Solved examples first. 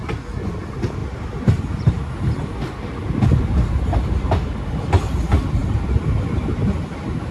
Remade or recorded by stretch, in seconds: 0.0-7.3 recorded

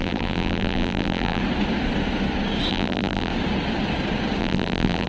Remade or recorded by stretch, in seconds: 0.0-1.4 remade; 1.4-2.7 recorded; 2.7-3.3 remade; 3.3-4.4 recorded; 4.4-5.1 remade

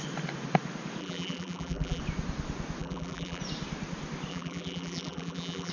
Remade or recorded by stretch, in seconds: 0.0-1.0 recorded; 1.0-2.0 remade; 2.0-2.8 recorded; 2.8-3.4 remade; 3.4-4.3 recorded; 4.3-5.7 remade

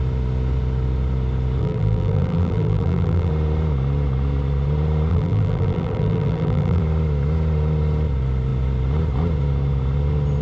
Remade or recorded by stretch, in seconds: 0.0-1.6 recorded; 1.6-3.3 remade; 3.3-5.1 recorded; 5.1-6.8 remade; 6.8-10.4 recorded

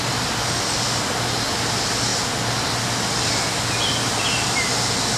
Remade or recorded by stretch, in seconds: 0.0-5.2 recorded

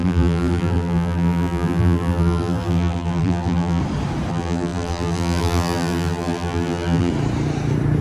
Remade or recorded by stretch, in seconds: 0.0-3.8 remade; 3.8-4.3 recorded; 4.3-7.1 remade; 7.1-8.0 recorded

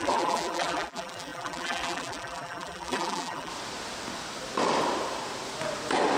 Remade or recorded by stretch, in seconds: 0.0-3.5 remade; 3.5-6.2 recorded